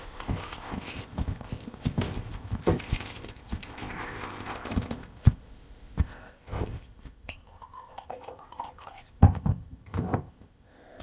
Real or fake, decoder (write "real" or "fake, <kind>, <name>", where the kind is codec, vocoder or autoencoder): fake, codec, ZipCodec